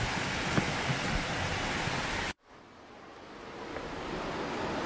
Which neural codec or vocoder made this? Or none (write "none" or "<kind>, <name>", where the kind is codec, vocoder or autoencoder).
none